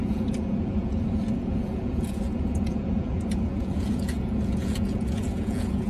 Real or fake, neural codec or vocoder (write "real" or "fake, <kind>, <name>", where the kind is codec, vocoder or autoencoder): fake, vocoder, Vocos